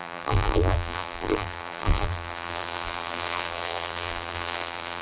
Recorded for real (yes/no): no